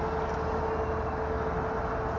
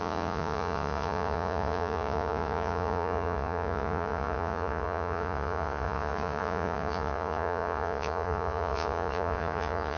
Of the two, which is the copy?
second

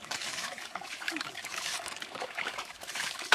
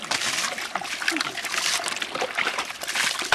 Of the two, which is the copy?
first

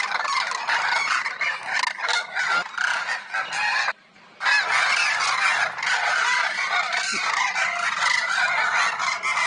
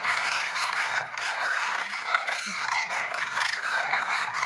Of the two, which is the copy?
second